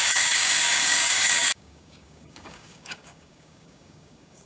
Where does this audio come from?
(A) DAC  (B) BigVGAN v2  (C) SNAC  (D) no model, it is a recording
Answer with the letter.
A